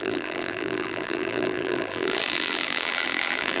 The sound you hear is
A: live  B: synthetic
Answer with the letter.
B